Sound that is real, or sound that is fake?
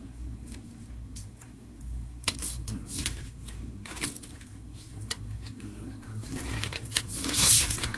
fake